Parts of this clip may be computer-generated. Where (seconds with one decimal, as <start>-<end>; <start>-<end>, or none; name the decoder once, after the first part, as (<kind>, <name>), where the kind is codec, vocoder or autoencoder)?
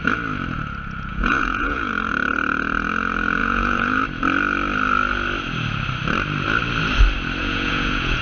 1.1-1.9 (vocoder, Vocos); 3.4-4.0; 7.4-8.2